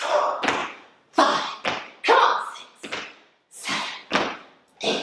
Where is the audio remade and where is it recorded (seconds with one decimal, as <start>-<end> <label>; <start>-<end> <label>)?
0.0-0.6 recorded; 0.6-1.2 remade; 1.2-5.0 recorded